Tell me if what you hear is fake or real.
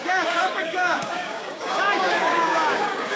fake